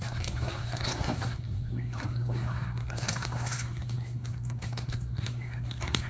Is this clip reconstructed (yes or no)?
yes